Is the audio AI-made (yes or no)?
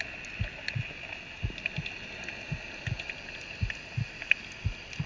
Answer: no